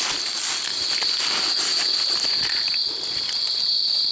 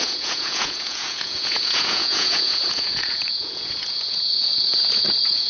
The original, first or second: first